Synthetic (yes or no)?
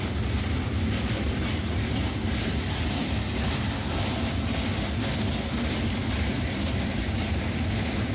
no